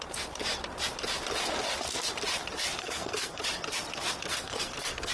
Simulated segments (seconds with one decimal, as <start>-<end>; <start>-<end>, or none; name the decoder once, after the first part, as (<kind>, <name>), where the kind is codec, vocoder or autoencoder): 2.8-3.4 (codec, SNAC); 4.3-5.1